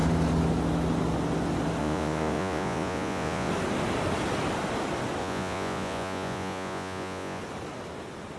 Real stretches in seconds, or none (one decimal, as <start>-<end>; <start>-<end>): 0.0-1.8; 3.5-5.2; 7.4-8.4